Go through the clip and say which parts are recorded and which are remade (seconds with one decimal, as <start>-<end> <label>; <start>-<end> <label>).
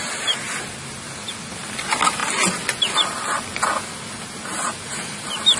0.0-5.6 recorded